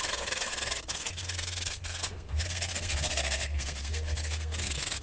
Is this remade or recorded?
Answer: remade